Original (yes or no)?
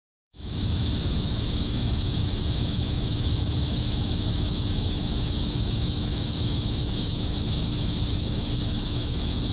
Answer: no